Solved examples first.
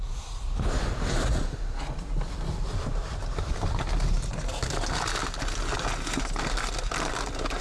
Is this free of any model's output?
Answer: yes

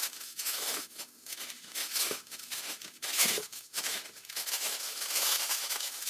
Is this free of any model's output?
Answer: no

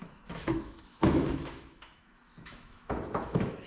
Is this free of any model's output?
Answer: no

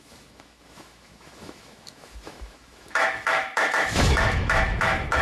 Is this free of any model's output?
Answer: no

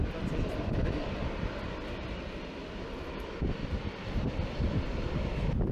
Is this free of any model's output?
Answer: yes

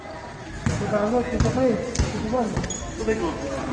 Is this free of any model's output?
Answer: yes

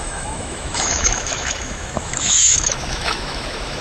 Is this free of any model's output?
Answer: no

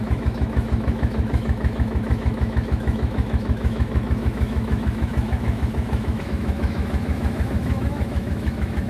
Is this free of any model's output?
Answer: no